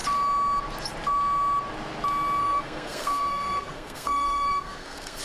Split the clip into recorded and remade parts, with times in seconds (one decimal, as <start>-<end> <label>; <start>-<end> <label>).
0.0-2.4 recorded; 2.4-5.2 remade

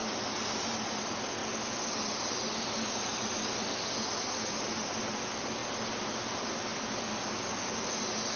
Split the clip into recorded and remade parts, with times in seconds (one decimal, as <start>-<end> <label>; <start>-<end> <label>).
0.0-8.4 recorded

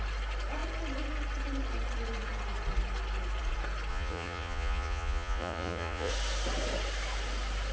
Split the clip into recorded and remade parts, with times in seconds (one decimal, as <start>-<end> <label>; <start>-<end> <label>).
0.0-3.9 recorded; 3.9-6.1 remade; 6.1-7.7 recorded

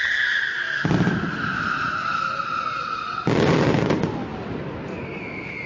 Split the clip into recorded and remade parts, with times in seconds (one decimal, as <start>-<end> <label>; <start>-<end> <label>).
0.0-5.7 recorded

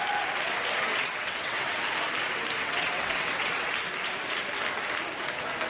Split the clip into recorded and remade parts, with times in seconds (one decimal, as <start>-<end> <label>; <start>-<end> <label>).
0.0-0.9 recorded; 0.9-1.8 remade; 1.8-2.6 recorded; 2.6-3.7 remade; 3.7-5.7 recorded

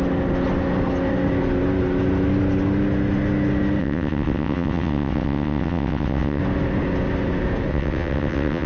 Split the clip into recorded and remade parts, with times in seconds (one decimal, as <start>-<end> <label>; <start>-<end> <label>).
0.0-3.8 recorded; 3.8-6.4 remade; 6.4-7.7 recorded; 7.7-8.7 remade